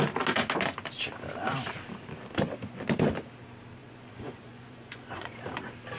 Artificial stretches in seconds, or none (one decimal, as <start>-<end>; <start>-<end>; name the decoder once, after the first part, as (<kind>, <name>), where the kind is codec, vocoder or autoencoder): 3.8-5.4 (vocoder, Vocos)